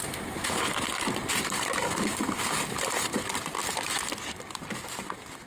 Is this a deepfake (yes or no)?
no